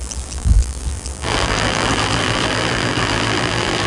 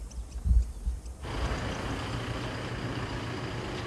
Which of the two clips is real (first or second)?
second